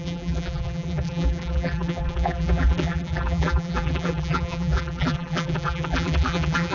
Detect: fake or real fake